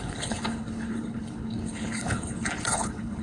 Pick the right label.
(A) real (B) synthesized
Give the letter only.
B